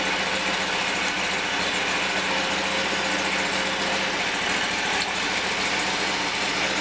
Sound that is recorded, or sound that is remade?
recorded